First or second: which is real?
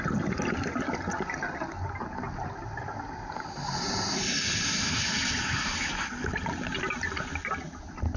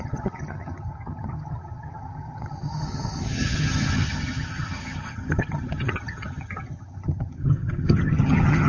first